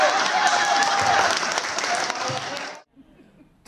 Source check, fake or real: real